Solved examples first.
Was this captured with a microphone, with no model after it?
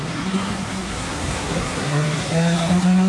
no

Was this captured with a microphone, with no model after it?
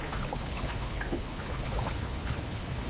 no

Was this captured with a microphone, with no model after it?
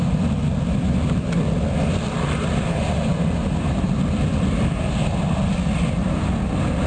yes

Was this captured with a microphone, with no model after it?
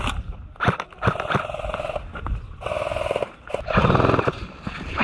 no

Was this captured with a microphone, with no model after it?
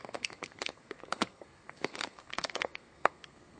no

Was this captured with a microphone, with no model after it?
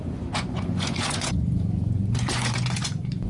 no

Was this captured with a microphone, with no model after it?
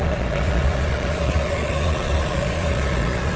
no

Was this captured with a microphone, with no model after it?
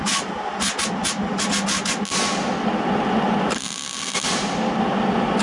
yes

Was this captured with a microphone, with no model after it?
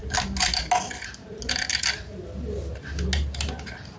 yes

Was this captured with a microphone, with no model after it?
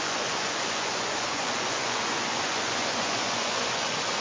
no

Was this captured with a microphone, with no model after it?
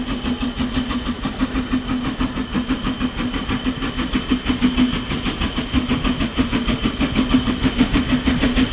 yes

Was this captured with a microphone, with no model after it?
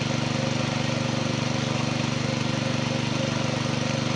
yes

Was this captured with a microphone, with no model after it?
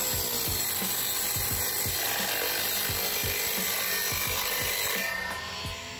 yes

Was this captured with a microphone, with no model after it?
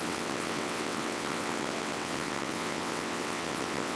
no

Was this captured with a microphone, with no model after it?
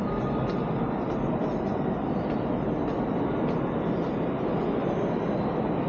yes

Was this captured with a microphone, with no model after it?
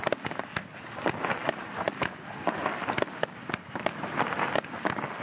yes